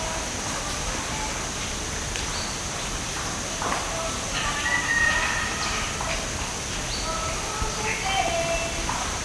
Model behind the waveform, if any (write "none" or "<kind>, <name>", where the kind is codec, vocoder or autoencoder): none